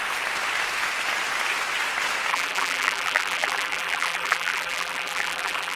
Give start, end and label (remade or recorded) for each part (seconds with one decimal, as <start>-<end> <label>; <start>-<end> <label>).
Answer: 0.0-2.3 recorded; 2.3-5.8 remade